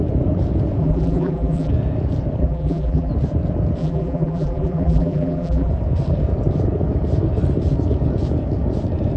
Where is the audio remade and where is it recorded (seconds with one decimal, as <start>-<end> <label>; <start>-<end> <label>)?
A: 0.0-0.8 recorded; 0.8-1.7 remade; 1.7-2.4 recorded; 2.4-3.1 remade; 3.1-3.8 recorded; 3.8-5.7 remade; 5.7-9.2 recorded